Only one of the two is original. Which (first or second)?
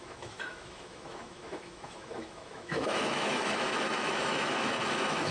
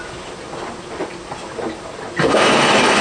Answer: second